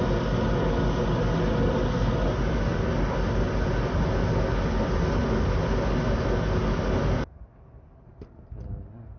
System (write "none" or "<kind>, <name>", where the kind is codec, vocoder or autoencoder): none